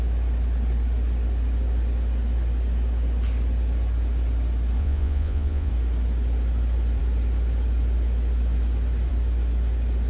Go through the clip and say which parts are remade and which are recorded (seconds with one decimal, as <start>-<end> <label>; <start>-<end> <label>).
0.0-4.8 recorded; 4.8-5.7 remade; 5.7-10.1 recorded